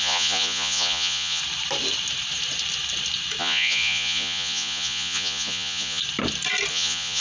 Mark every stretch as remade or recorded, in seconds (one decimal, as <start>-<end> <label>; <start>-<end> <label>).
0.0-1.4 remade; 1.4-3.4 recorded; 3.4-6.0 remade; 6.0-6.7 recorded; 6.7-7.2 remade